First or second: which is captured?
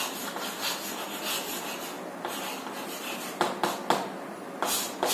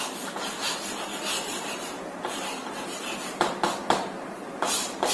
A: first